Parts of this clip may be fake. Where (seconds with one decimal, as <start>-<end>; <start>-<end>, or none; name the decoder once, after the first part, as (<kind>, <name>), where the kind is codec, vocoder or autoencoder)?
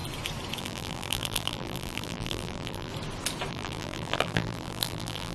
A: 0.6-2.9 (vocoder, BigVGAN v2); 3.5-5.3